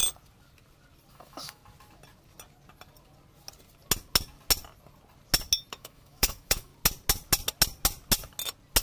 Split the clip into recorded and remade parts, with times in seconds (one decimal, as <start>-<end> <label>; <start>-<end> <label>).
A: 0.0-1.1 recorded; 1.1-1.6 remade; 1.6-5.7 recorded; 5.7-6.7 remade; 6.7-8.8 recorded

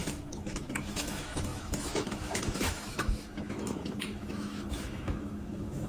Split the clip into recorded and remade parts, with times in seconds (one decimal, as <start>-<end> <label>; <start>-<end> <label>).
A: 0.0-5.9 remade

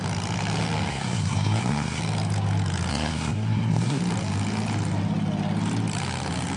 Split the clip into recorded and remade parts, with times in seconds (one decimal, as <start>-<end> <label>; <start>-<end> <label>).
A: 0.0-0.9 recorded; 0.9-2.0 remade; 2.0-2.9 recorded; 2.9-4.0 remade; 4.0-6.6 recorded

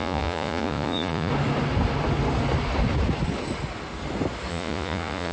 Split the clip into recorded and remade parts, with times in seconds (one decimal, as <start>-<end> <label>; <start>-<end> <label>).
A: 0.0-1.3 remade; 1.3-4.5 recorded; 4.5-5.3 remade

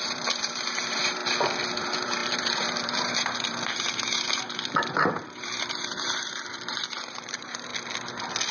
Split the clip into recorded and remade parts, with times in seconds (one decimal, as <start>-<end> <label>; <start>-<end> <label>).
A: 0.0-1.2 remade; 1.2-1.8 recorded; 1.8-7.7 remade; 7.7-8.5 recorded

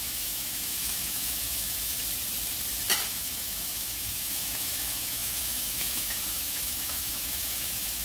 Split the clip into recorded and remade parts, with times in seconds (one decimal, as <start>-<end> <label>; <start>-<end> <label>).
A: 0.0-2.0 remade; 2.0-3.1 recorded; 3.1-8.0 remade